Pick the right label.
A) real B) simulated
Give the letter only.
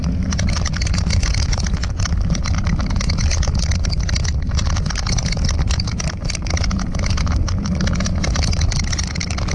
A